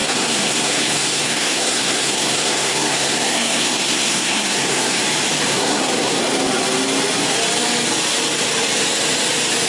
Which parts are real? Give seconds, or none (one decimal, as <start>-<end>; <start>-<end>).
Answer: 5.0-5.5; 6.2-9.7